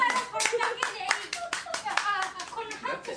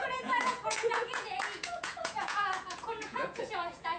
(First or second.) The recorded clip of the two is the first